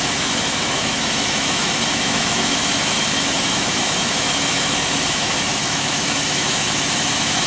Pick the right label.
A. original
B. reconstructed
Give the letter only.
B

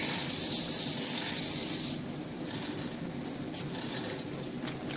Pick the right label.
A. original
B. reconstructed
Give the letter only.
A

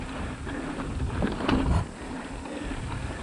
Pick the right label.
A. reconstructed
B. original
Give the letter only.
B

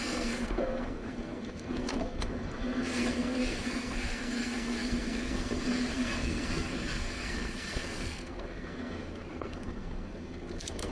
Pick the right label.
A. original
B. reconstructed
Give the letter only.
B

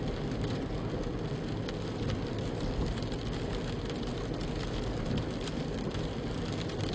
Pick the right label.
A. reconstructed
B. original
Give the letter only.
B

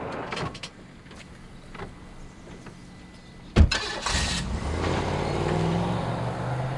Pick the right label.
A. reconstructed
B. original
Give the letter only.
B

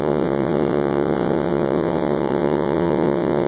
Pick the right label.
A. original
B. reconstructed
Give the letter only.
B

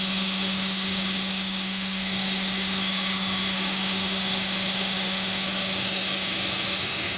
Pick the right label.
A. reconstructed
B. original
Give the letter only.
A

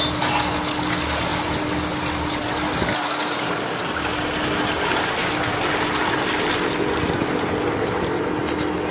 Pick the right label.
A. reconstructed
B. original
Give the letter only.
B